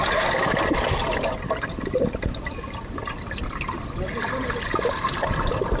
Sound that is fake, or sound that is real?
real